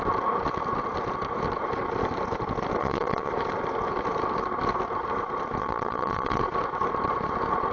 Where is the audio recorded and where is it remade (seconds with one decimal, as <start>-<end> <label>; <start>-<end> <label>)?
0.0-2.8 recorded; 2.8-3.3 remade; 3.3-5.6 recorded; 5.6-6.4 remade; 6.4-7.7 recorded